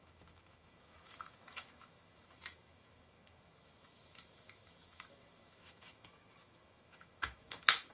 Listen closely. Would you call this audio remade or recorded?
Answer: remade